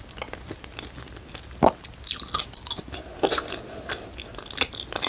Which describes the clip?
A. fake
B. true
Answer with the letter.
B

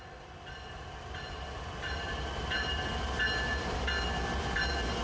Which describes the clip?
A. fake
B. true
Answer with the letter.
B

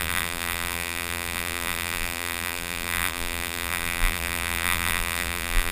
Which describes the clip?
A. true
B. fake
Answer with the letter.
B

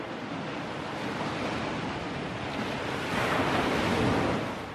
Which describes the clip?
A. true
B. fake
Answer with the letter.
A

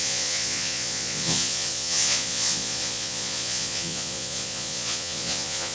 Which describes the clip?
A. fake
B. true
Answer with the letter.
A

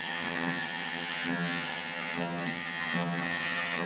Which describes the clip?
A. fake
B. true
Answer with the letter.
A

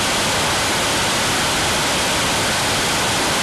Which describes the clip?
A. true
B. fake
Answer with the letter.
A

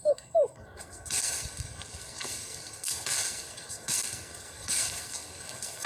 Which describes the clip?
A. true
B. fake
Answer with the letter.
B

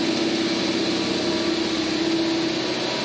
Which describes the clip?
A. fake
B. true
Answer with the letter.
B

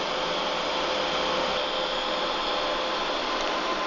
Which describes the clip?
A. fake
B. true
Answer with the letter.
B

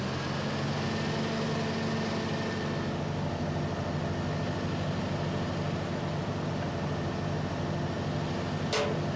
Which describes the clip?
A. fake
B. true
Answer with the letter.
B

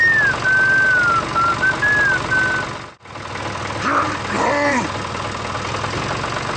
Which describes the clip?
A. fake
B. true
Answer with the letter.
B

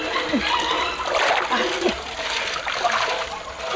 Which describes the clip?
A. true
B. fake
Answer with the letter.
A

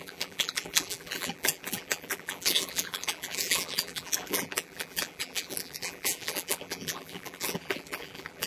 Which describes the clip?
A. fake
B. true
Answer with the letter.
A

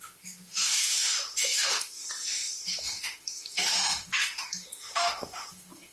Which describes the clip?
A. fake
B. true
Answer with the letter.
A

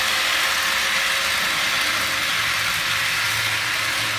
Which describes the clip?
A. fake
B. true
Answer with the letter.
B